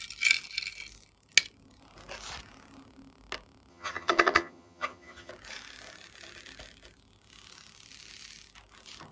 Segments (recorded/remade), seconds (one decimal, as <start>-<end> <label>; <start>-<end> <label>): 0.0-3.7 recorded; 3.7-5.3 remade; 5.3-9.1 recorded